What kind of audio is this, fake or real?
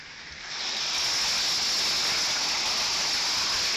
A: real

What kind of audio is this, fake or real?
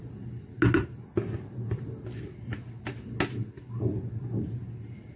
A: real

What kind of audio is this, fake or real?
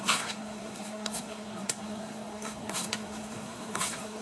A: fake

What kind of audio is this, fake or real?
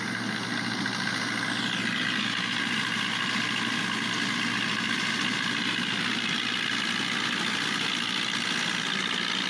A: real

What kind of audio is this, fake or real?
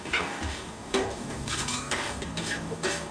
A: fake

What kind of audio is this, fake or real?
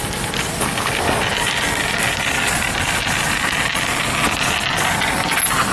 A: real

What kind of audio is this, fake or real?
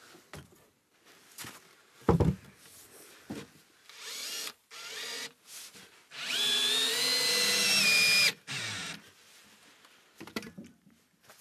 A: real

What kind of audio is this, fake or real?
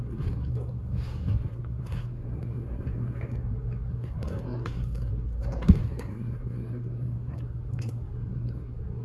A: fake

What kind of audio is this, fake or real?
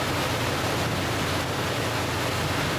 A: real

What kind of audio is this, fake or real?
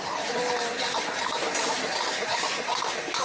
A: real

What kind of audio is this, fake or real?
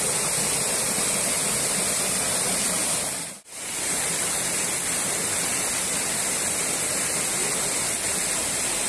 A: real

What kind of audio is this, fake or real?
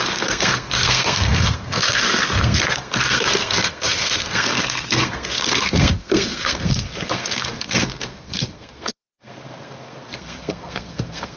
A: fake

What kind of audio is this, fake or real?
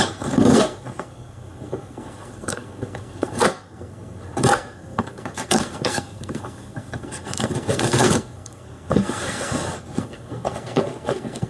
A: fake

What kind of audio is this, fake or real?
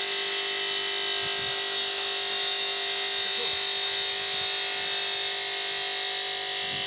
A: real